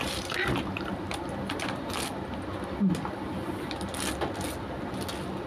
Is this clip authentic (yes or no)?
yes